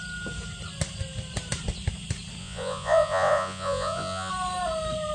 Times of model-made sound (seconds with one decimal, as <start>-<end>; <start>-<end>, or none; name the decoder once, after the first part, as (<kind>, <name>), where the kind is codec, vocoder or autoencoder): 2.4-4.3 (vocoder, Vocos)

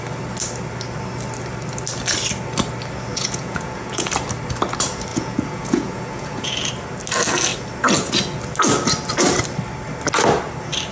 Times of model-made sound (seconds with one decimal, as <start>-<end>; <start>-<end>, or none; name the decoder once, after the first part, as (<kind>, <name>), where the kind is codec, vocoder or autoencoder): 3.1-4.1 (vocoder, Vocos); 5.1-6.7

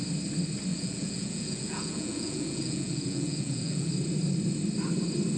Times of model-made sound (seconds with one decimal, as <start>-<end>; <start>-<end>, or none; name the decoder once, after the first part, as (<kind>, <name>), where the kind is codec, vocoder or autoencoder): 0.7-3.9 (vocoder, Vocos)

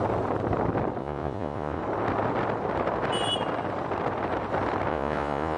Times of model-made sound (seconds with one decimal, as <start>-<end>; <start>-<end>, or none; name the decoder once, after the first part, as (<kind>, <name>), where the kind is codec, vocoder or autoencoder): 1.0-1.8 (vocoder, Vocos); 4.9-5.6

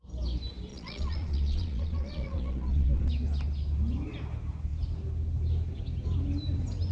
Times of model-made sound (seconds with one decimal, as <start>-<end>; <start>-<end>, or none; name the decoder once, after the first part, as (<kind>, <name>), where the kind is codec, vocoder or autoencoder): 0.7-3.1 (vocoder, Vocos)

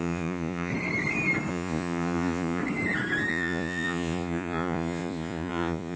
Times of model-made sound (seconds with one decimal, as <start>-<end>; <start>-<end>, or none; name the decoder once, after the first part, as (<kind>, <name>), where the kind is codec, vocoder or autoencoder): 0.0-0.7 (vocoder, Vocos); 1.5-2.6; 3.3-6.0

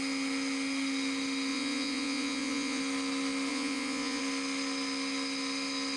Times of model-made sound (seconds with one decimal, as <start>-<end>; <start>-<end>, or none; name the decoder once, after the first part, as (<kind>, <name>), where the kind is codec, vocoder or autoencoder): 1.5-2.8 (vocoder, Vocos); 3.5-4.2

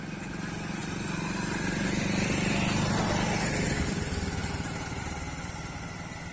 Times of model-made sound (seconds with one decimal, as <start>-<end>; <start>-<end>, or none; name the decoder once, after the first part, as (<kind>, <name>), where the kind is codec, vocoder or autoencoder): none